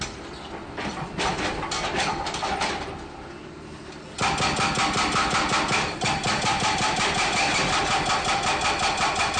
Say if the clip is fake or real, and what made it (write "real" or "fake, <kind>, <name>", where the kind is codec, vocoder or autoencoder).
real